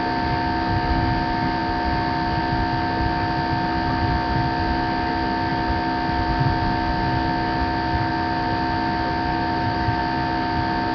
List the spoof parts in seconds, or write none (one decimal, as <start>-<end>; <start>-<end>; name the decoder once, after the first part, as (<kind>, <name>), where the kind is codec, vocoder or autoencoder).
9.3-10.0 (autoencoder, DAC-VAE)

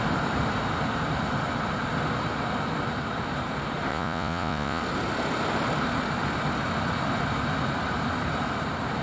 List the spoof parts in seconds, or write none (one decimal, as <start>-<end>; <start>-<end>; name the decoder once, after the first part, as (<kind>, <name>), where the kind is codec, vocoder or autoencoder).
3.9-4.8 (vocoder, Vocos)

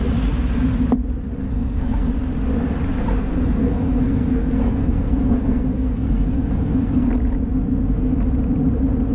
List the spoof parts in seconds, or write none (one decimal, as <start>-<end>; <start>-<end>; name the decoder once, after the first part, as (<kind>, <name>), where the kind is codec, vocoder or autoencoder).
1.4-2.1 (codec, SNAC); 3.2-7.1

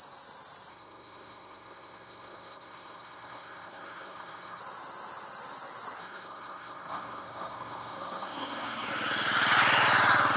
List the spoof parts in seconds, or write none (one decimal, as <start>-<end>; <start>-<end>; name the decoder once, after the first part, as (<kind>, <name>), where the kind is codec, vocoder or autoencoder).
0.7-4.6 (codec, SNAC); 6.0-8.9

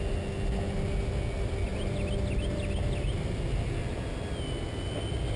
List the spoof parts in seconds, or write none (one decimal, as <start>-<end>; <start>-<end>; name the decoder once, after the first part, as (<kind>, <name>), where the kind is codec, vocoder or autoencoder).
none

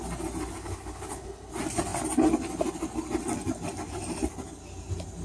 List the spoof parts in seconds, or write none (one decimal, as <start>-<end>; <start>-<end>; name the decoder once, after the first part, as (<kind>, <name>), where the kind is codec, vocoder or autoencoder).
0.6-1.5 (codec, HILCodec)